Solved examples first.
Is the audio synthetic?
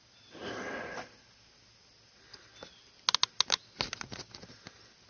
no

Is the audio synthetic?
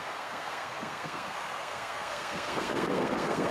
yes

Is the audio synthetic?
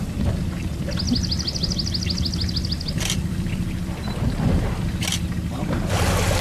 no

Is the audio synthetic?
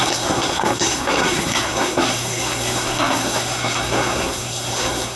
yes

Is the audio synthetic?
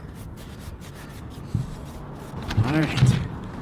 no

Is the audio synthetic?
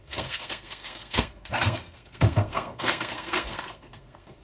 yes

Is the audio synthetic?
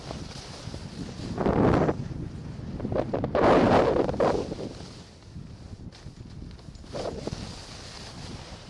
no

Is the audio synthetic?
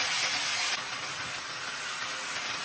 no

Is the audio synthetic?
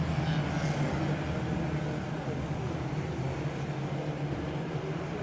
no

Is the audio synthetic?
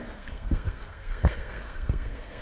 yes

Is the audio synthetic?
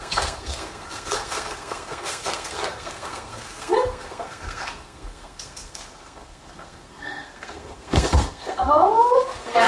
yes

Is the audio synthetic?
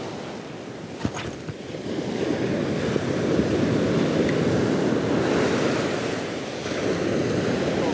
no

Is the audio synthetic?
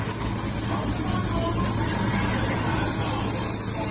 no